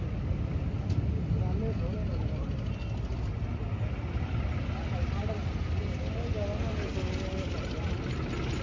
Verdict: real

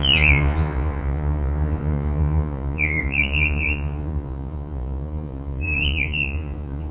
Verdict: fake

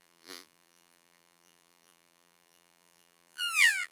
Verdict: fake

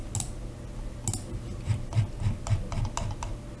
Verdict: real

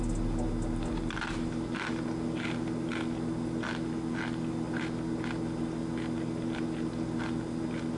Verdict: real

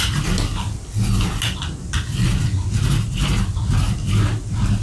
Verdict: real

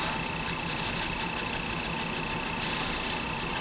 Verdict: real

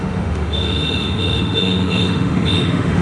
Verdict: fake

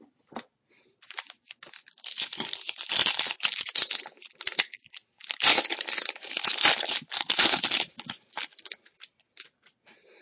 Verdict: real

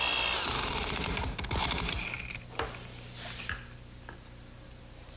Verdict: real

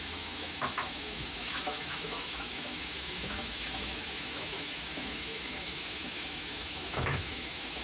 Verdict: fake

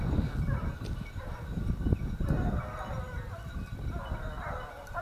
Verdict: real